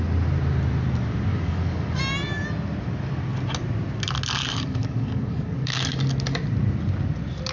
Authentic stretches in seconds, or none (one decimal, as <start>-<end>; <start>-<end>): 0.0-1.3; 2.0-4.4; 5.9-7.5